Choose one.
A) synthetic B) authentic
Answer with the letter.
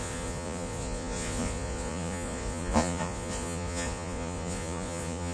A